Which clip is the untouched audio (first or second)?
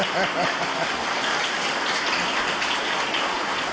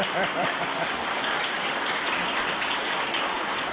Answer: first